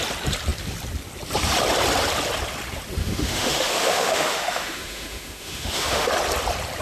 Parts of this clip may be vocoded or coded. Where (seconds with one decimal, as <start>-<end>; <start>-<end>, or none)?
3.0-6.1